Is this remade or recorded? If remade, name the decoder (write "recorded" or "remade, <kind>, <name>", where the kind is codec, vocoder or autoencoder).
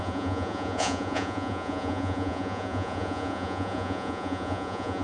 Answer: remade, vocoder, Vocos